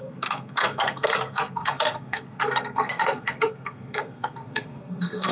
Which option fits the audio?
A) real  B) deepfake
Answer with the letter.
B